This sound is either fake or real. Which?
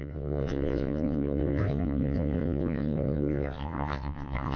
fake